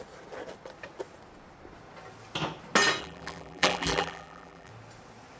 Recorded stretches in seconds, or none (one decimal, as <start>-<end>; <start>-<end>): 0.0-3.0; 4.7-5.4